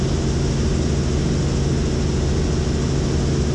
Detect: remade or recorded recorded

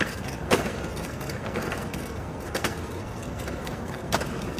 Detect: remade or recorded remade